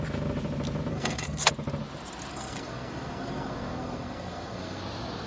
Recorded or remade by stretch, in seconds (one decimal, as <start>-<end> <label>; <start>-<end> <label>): 0.0-0.9 recorded; 0.9-1.5 remade; 1.5-2.3 recorded; 2.3-4.8 remade; 4.8-5.3 recorded